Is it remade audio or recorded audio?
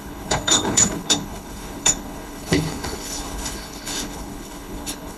remade